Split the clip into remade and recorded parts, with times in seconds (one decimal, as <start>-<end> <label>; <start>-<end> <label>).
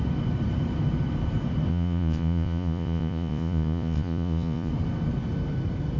0.0-1.7 recorded; 1.7-4.7 remade; 4.7-6.0 recorded